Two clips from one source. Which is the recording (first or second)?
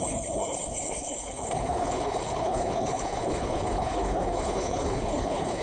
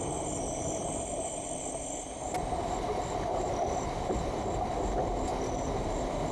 second